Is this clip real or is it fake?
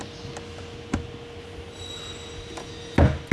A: real